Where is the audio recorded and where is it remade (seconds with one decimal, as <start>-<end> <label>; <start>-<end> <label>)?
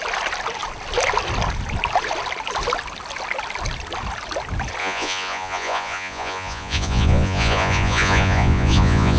0.0-4.8 recorded; 4.8-9.2 remade